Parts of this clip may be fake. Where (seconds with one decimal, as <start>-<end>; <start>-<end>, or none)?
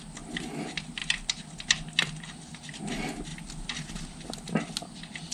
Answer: none